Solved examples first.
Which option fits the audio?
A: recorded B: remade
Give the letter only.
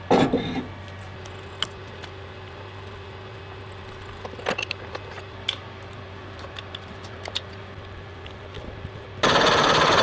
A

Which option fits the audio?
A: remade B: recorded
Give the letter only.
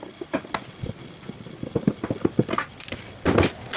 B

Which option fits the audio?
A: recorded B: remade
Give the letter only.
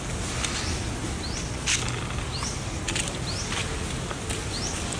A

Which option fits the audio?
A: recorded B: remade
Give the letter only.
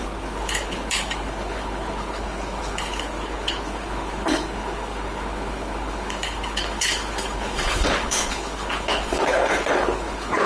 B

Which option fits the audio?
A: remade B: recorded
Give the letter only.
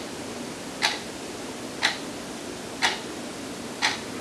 B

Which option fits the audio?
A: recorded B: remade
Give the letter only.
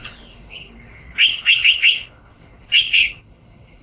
B